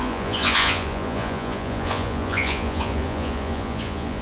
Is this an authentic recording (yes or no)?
no